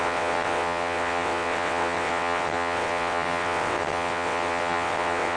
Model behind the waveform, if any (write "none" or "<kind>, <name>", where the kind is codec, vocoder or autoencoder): vocoder, WaveNeXt